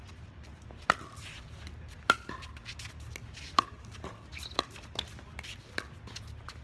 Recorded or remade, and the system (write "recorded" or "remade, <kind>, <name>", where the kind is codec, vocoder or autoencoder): recorded